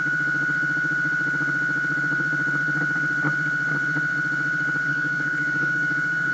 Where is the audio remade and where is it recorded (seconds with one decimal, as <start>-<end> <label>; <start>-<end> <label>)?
0.0-4.9 recorded; 4.9-6.3 remade